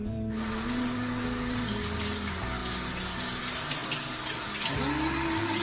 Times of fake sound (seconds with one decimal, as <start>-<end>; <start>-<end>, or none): 0.0-5.6

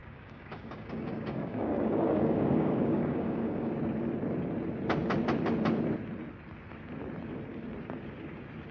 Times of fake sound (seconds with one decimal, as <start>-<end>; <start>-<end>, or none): 0.0-3.7

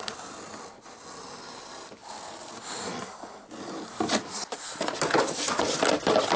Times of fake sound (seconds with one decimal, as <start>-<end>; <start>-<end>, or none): none

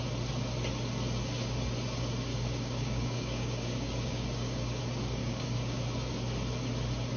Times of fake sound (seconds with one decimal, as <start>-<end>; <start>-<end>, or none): 2.3-4.8; 5.2-5.8

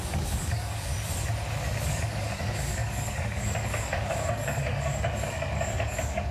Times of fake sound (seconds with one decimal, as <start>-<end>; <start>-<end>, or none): 0.0-0.9; 1.9-6.3

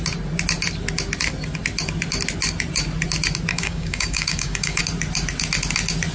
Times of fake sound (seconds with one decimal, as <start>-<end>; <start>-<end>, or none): 3.5-4.8